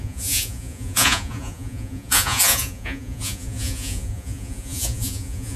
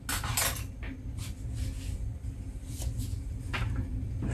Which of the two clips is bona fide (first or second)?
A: second